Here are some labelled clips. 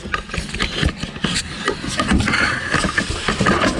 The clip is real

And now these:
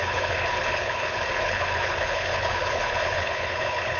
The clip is fake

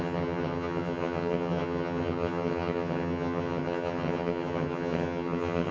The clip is fake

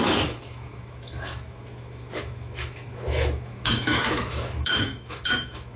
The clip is fake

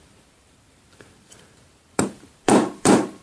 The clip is fake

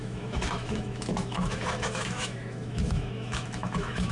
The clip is fake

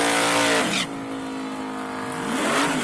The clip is real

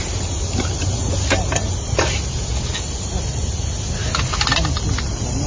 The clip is real